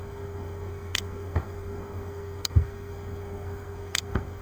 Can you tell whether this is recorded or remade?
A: remade